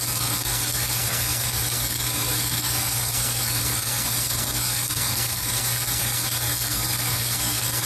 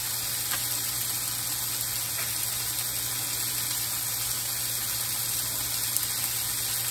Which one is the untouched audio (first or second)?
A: second